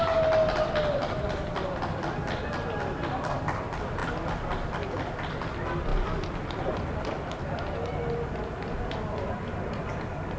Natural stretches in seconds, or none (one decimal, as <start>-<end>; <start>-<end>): 0.0-10.4